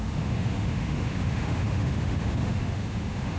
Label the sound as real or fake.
fake